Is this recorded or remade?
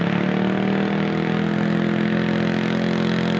recorded